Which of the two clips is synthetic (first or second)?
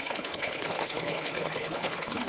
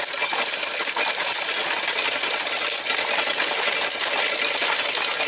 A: first